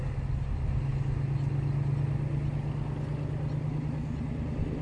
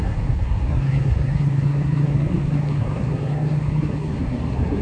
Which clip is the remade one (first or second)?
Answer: second